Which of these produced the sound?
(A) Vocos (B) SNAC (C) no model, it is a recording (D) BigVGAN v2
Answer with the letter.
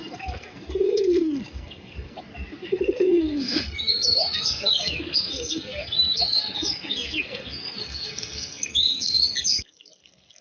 B